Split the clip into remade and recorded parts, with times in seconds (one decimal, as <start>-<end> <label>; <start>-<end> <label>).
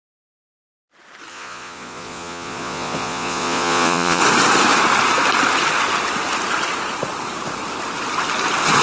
0.0-1.3 recorded; 1.3-4.2 remade; 4.2-8.8 recorded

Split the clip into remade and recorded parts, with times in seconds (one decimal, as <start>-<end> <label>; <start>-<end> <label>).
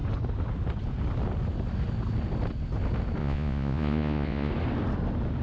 0.0-3.2 recorded; 3.2-4.5 remade; 4.5-5.4 recorded